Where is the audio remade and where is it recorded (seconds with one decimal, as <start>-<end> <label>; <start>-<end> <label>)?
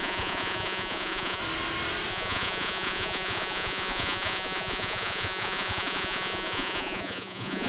0.0-1.4 remade; 1.4-2.1 recorded; 2.1-7.7 remade